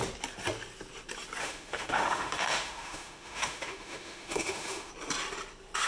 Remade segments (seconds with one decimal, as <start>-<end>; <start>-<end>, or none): 1.4-4.9